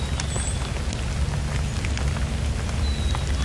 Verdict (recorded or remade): recorded